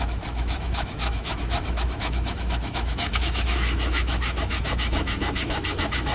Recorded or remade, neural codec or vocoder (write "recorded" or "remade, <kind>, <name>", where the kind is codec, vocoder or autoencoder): remade, autoencoder, DAC-VAE